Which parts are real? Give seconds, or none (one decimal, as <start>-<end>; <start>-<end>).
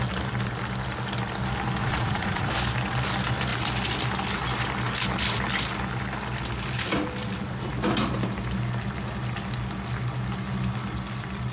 0.0-1.8; 2.5-11.5